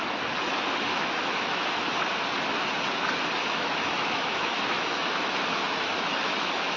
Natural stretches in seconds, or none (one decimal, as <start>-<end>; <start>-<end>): 0.0-0.9; 1.7-3.4